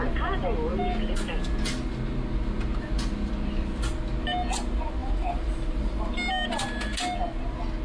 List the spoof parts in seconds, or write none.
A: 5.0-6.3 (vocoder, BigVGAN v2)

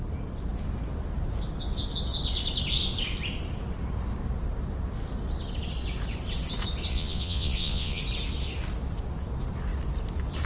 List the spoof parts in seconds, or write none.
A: 6.9-8.0 (vocoder, Vocos)

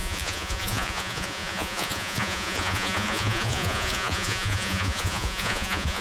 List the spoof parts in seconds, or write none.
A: 0.0-6.0 (vocoder, Vocos)